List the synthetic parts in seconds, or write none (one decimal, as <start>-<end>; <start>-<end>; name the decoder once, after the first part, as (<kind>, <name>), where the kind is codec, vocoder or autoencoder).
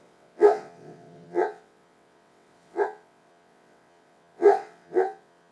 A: 0.0-5.5 (vocoder, WaveNeXt)